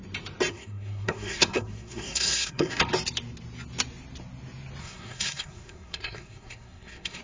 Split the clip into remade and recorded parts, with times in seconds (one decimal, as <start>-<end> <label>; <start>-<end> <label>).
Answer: 0.0-0.5 recorded; 0.5-2.8 remade; 2.8-4.8 recorded; 4.8-7.2 remade